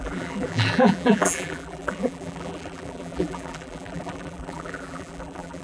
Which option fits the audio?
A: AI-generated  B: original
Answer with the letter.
A